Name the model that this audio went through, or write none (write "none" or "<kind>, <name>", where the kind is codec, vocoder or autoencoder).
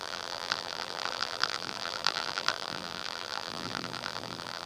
vocoder, BigVGAN v2